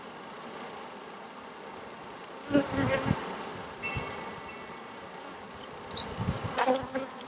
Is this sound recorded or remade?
recorded